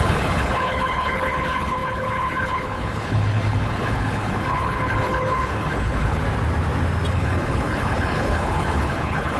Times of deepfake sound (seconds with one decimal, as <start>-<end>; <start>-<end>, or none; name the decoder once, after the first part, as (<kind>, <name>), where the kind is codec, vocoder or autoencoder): 0.0-6.2 (codec, HILCodec); 7.1-9.4